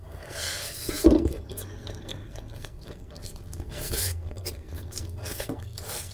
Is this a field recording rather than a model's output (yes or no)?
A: no